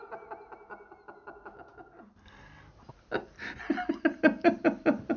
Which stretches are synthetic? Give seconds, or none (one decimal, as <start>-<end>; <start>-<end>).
none